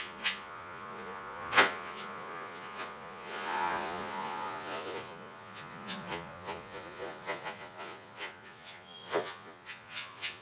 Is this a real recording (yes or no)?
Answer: no